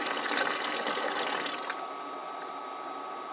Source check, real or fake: fake